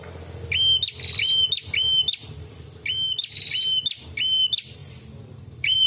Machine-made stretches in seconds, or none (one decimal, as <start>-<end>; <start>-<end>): 4.8-5.9